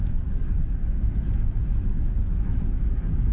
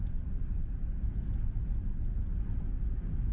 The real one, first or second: second